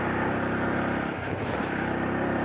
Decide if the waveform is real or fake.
fake